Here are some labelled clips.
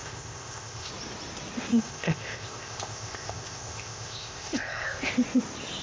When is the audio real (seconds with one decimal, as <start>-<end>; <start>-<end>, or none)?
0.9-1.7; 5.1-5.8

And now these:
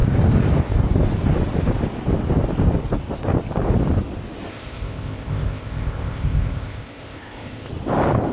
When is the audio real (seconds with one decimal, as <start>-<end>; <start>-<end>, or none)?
0.0-4.5; 7.7-8.3

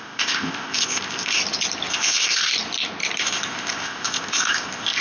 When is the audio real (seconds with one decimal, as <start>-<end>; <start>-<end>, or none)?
1.4-1.9; 2.5-3.2

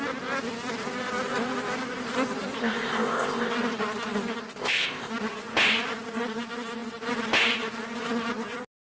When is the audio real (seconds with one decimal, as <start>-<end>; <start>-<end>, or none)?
0.0-2.6; 3.5-4.6; 5.1-8.8